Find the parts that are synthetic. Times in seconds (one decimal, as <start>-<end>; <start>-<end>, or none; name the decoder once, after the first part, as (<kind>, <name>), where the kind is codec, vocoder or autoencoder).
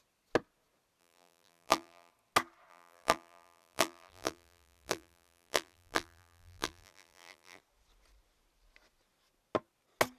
1.0-2.1 (vocoder, BigVGAN v2); 2.7-7.6